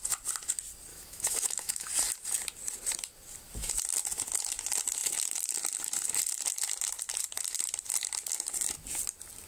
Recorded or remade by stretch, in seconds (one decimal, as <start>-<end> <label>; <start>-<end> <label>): 0.0-0.9 recorded; 0.9-1.9 remade; 1.9-9.5 recorded